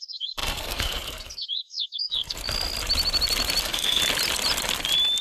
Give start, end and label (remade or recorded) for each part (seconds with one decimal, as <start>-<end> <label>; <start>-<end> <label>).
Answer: 0.0-2.4 remade; 2.4-3.6 recorded; 3.6-4.0 remade; 4.0-5.2 recorded